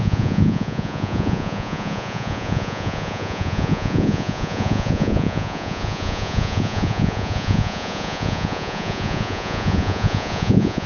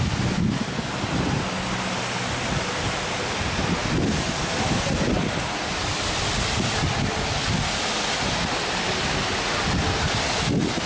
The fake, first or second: first